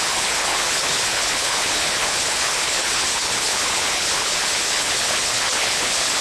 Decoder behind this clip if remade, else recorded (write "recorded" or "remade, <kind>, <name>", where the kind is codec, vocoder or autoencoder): remade, codec, HILCodec